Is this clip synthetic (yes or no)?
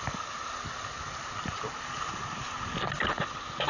no